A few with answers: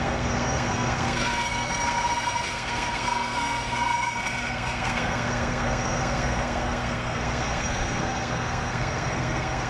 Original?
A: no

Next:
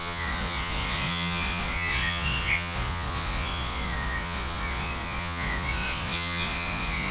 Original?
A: no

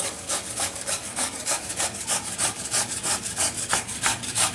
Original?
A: no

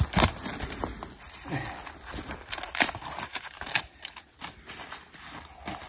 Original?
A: yes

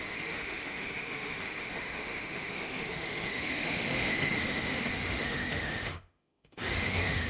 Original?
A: no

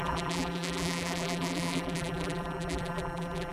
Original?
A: no